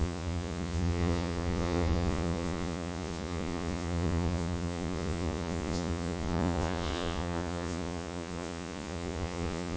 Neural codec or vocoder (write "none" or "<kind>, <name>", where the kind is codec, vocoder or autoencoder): vocoder, Vocos